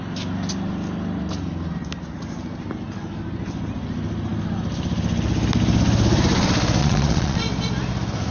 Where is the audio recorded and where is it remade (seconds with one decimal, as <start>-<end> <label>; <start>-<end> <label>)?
0.0-6.8 recorded; 6.8-7.4 remade; 7.4-8.3 recorded